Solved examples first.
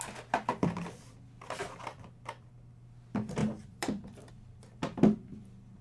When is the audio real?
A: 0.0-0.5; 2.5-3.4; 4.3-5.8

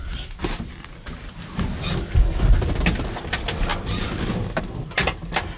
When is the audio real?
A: 0.9-3.1; 3.7-4.6

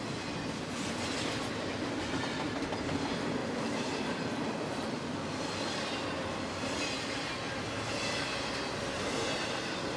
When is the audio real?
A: 0.0-3.4; 5.8-10.0

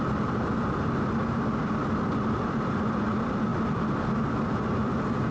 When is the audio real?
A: 3.5-4.4

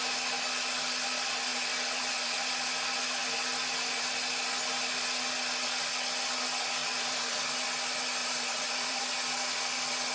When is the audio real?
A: 0.0-1.5; 2.5-6.8; 7.4-8.2; 9.0-10.1

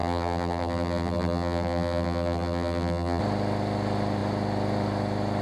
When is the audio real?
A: 3.2-5.4

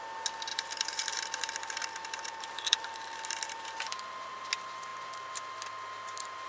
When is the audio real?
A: 0.0-0.5; 4.4-6.5